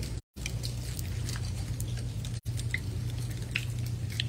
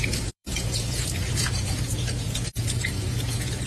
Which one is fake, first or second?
second